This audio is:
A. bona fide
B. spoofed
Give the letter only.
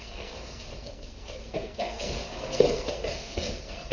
B